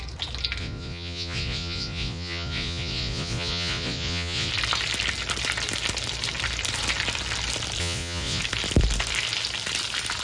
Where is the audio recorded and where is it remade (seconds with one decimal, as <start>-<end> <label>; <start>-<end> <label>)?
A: 0.0-0.6 recorded; 0.6-4.5 remade; 4.5-7.8 recorded; 7.8-8.4 remade; 8.4-10.2 recorded